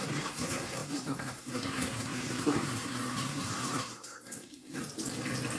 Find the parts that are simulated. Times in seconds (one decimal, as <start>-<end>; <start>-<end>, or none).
0.0-4.8

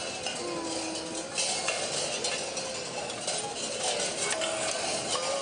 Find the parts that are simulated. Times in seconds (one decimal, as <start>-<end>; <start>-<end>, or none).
none

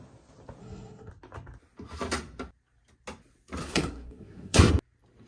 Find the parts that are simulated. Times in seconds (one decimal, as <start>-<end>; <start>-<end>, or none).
0.6-1.1; 3.6-4.7